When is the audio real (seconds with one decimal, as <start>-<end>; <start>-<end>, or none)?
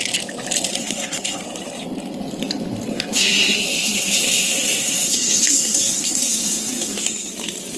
0.0-0.7; 1.4-2.9; 7.3-7.8